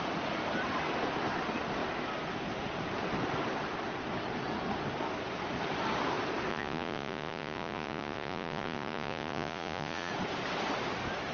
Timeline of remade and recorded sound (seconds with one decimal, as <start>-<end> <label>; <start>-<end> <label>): 0.0-6.5 recorded; 6.5-10.1 remade; 10.1-11.3 recorded